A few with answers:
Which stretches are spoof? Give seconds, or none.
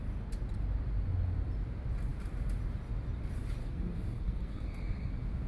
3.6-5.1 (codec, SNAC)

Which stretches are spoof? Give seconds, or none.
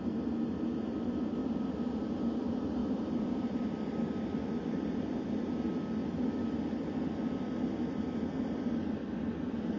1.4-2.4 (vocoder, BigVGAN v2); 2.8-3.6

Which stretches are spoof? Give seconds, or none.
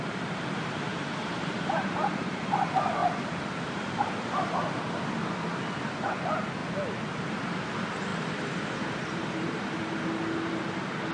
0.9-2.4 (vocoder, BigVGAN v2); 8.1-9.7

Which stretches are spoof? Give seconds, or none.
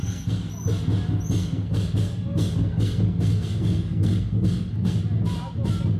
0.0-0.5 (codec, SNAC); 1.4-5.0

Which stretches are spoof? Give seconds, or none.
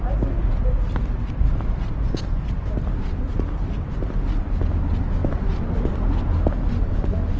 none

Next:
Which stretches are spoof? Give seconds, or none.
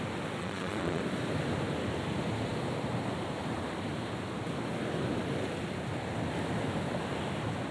0.4-1.0 (vocoder, Vocos)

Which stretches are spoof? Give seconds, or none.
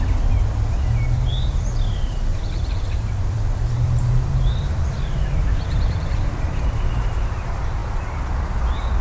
2.3-6.8 (vocoder, BigVGAN v2)